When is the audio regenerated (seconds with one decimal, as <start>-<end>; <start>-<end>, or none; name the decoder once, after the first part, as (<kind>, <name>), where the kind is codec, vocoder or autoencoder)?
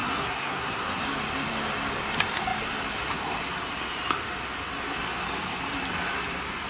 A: 0.0-1.0 (codec, SNAC)